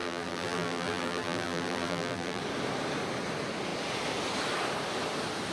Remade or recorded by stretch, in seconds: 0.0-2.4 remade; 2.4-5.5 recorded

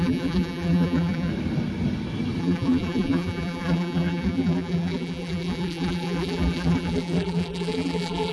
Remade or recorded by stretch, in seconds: 0.0-1.3 remade; 1.3-2.4 recorded; 2.4-8.3 remade

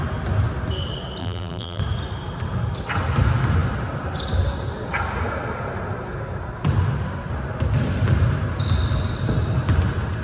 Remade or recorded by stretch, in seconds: 0.0-1.2 recorded; 1.2-1.8 remade; 1.8-10.2 recorded

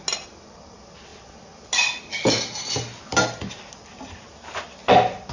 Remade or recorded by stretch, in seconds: 0.0-5.3 recorded

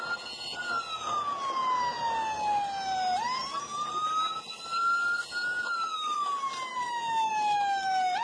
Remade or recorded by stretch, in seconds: 0.0-8.2 recorded

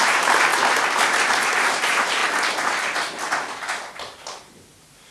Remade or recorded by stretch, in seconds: 0.0-0.5 remade; 0.5-1.3 recorded; 1.3-2.2 remade; 2.2-5.1 recorded

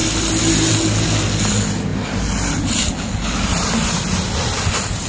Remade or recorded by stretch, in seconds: 0.0-0.7 remade; 0.7-1.9 recorded; 1.9-4.3 remade; 4.3-5.1 recorded

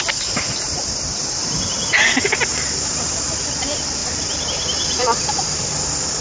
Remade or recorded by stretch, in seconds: 0.0-4.0 recorded; 4.0-5.8 remade; 5.8-6.2 recorded